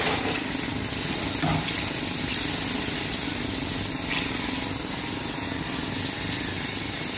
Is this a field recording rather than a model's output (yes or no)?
yes